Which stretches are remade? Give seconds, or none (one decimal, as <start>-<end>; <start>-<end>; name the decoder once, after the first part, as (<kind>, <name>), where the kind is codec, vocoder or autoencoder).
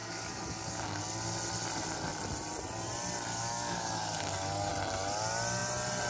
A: 0.0-1.0 (codec, DAC); 3.3-4.7